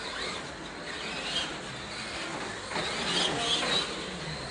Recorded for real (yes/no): yes